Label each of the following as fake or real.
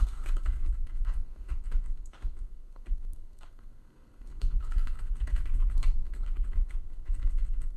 fake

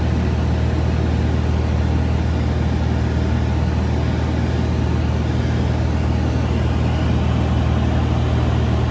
real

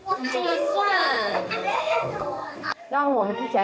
fake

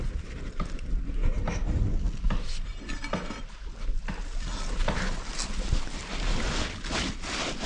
real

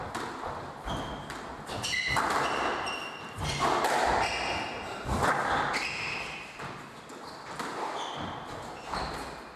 real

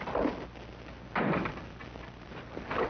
real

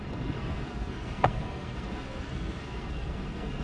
fake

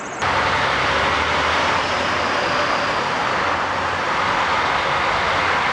real